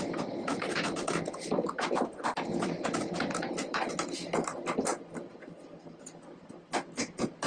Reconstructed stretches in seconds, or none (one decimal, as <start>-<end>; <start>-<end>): none